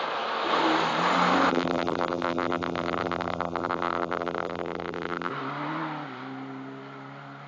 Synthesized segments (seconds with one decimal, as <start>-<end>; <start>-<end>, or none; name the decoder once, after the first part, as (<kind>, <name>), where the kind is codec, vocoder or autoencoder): 1.5-5.3 (vocoder, BigVGAN v2)